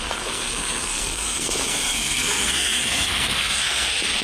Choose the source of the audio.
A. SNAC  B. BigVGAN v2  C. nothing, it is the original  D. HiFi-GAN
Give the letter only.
A